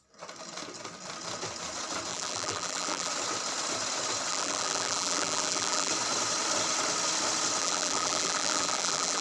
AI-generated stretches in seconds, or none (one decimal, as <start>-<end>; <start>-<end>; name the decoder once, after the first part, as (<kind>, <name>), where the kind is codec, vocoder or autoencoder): 2.1-3.1 (vocoder, BigVGAN v2); 4.3-5.9; 7.6-9.2